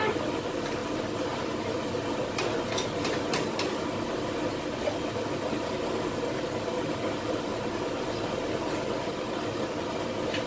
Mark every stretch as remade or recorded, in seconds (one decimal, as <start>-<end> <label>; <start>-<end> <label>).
0.0-10.5 recorded